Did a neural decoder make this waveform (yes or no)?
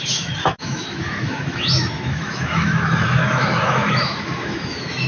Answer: yes